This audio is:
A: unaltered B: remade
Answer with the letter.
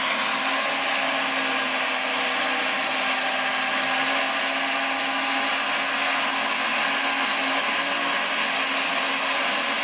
A